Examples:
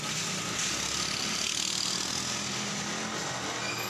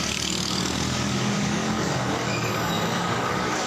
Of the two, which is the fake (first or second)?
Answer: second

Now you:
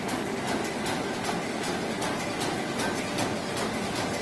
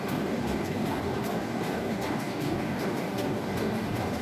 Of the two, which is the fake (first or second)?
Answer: second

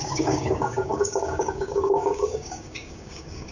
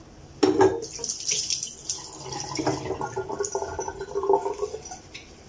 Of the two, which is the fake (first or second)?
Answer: first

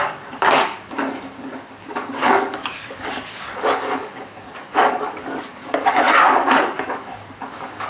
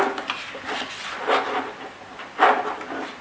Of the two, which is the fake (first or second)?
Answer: first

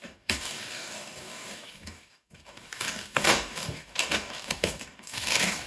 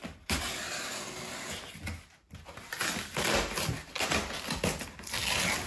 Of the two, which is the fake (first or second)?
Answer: first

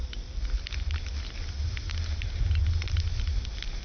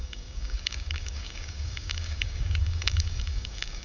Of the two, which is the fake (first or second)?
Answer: second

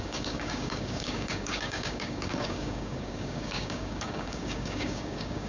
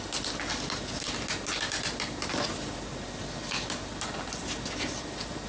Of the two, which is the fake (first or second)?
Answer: first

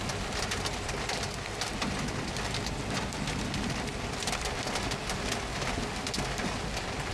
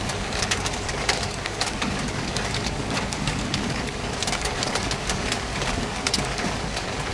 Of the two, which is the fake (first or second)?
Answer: second